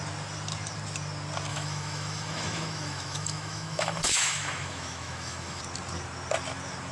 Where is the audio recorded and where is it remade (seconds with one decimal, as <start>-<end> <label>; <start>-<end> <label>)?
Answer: 0.0-1.5 recorded; 1.5-5.6 remade; 5.6-6.9 recorded